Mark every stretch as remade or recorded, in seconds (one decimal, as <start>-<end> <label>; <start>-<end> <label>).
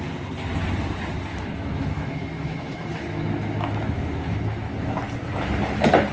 0.0-1.3 recorded; 1.3-5.0 remade; 5.0-6.1 recorded